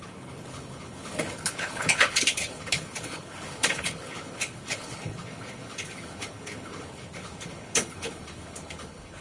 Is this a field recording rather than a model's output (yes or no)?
no